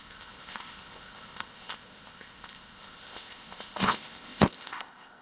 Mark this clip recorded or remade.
remade